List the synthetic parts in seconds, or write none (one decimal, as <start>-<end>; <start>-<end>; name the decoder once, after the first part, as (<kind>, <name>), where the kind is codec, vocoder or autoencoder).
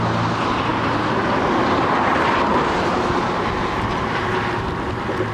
none